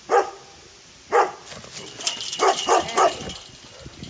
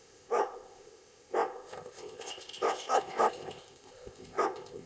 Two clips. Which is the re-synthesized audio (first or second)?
second